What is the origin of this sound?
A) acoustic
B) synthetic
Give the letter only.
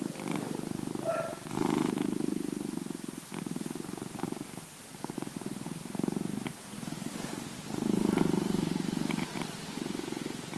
A